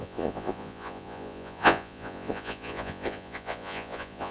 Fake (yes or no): yes